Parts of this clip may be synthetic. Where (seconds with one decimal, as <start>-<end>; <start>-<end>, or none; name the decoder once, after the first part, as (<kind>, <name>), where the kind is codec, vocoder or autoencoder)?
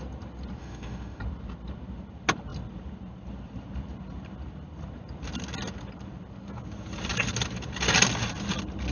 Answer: 0.6-1.2 (autoencoder, DAC-VAE)